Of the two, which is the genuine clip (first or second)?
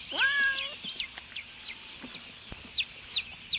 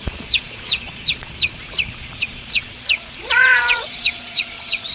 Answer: first